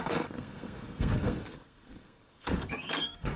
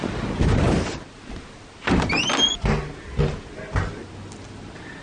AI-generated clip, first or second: first